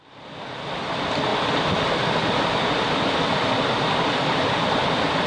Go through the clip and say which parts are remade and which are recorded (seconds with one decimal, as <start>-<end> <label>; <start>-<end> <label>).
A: 0.0-1.3 recorded; 1.3-3.7 remade; 3.7-5.3 recorded